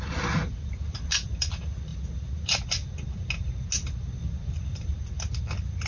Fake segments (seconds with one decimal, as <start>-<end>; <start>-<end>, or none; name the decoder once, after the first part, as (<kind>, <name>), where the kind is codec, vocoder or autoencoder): none